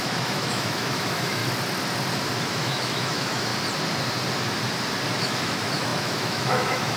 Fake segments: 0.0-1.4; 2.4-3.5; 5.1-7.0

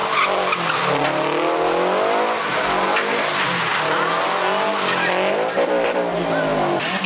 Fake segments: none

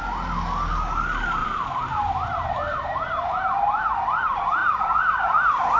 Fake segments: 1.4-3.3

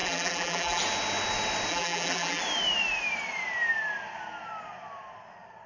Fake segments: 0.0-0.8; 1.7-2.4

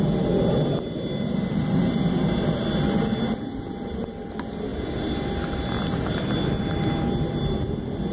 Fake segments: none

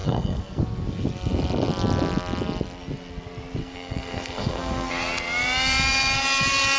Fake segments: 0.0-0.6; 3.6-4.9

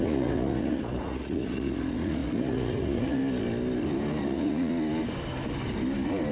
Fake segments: 0.0-3.2; 4.2-4.7

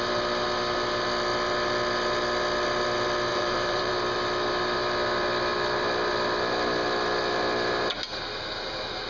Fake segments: 3.3-3.9